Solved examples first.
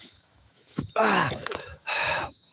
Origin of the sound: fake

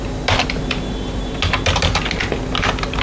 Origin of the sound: real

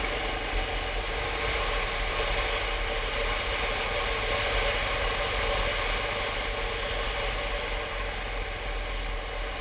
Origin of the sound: real